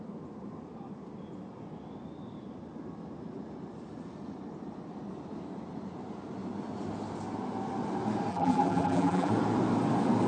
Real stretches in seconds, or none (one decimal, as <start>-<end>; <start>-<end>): 0.0-8.3; 9.3-10.3